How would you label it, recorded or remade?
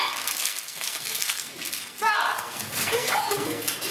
remade